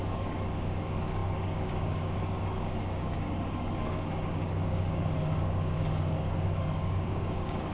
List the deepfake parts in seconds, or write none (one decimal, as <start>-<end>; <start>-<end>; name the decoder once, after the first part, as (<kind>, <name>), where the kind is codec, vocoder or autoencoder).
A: 0.0-7.7 (codec, DAC)